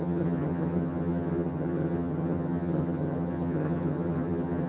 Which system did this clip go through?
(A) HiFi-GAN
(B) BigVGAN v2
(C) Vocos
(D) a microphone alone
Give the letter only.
A